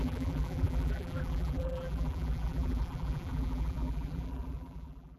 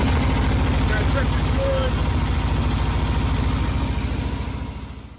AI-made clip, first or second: first